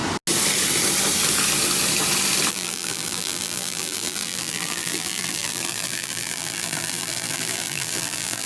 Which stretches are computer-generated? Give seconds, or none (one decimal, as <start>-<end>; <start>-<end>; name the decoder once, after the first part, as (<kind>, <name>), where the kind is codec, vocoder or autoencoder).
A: 2.5-8.5 (vocoder, BigVGAN v2)